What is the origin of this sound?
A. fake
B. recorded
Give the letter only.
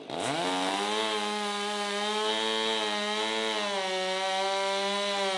B